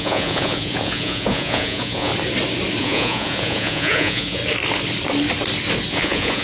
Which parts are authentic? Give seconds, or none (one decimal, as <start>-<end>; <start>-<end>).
2.1-2.8; 4.4-5.9